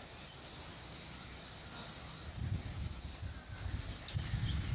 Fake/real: real